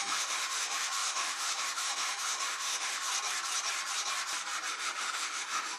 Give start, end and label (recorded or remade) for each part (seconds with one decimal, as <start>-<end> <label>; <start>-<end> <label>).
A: 0.0-3.1 remade; 3.1-4.7 recorded; 4.7-5.8 remade